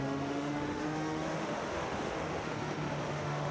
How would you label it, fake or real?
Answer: fake